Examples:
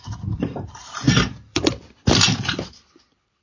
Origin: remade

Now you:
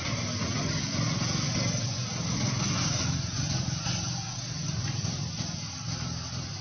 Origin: recorded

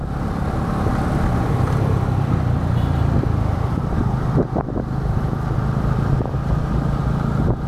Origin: remade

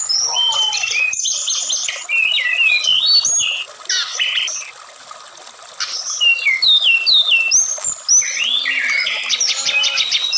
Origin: recorded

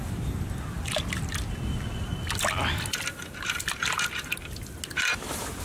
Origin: recorded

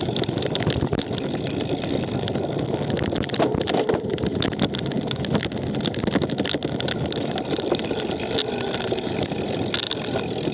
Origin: recorded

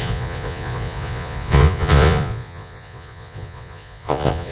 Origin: remade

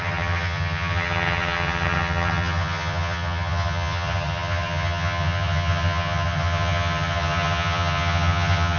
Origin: remade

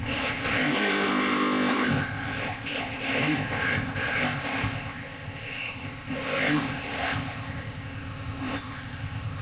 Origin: remade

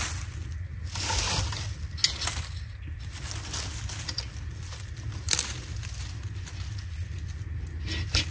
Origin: recorded